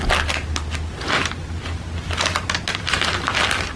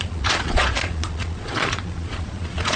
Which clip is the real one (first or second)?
first